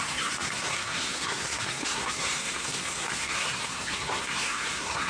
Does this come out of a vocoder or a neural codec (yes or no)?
yes